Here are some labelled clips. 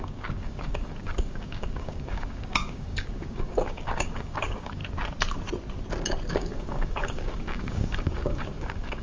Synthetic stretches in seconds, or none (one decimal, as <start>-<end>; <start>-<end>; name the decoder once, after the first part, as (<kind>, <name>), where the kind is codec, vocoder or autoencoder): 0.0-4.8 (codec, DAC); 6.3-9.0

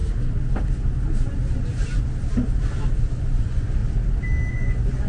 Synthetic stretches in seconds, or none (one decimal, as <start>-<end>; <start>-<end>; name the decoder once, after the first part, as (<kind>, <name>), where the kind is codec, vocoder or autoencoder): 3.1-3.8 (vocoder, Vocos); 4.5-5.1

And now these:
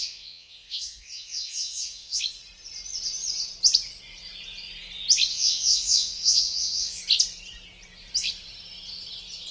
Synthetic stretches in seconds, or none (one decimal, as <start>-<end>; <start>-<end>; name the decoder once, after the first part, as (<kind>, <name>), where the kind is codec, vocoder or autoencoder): 0.0-2.2 (vocoder, Vocos); 5.3-7.0

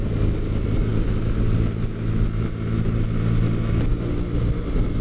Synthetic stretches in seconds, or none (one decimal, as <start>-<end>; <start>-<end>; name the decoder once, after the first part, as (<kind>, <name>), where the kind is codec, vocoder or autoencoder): none

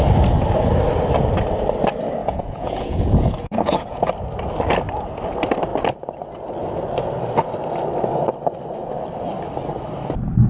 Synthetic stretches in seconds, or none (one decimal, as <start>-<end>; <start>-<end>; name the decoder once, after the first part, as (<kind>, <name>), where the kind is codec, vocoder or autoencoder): 2.2-4.1 (vocoder, Vocos)

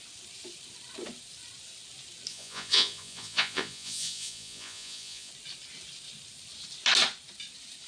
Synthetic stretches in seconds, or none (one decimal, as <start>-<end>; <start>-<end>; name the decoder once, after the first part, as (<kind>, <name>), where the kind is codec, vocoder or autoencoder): 2.3-5.3 (vocoder, Vocos)

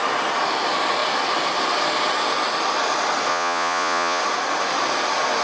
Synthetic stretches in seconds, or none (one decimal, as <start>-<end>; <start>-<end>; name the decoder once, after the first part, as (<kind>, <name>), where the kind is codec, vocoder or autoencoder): 3.3-4.2 (vocoder, Vocos)

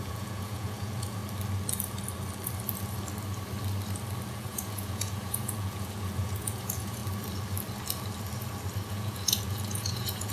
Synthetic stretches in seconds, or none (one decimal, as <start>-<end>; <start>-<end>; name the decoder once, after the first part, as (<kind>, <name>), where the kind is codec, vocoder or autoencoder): 0.0-1.2 (vocoder, Vocos); 4.3-7.0; 8.9-10.3